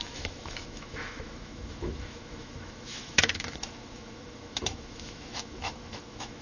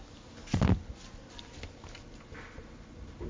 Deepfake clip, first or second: first